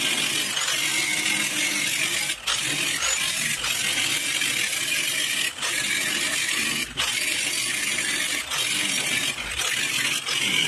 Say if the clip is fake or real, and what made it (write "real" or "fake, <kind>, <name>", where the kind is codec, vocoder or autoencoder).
real